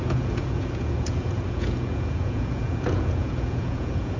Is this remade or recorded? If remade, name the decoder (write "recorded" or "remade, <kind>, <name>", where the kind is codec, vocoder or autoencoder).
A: remade, vocoder, Vocos